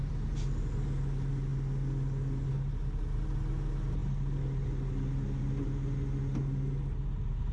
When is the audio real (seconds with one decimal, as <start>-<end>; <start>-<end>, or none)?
0.0-7.5